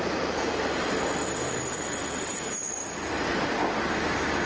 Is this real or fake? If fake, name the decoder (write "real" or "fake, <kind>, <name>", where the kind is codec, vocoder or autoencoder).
real